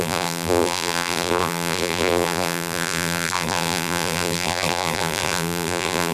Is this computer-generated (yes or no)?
yes